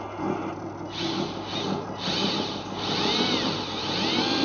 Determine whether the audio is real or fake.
real